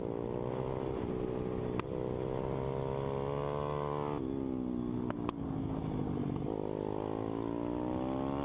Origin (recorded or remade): recorded